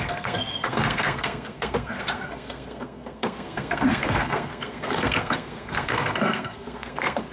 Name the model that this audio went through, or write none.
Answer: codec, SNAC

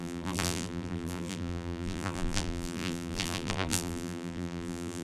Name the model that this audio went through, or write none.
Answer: vocoder, BigVGAN v2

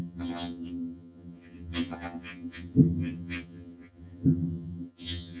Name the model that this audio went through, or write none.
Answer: vocoder, HiFi-GAN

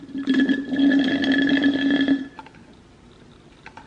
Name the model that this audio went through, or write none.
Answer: none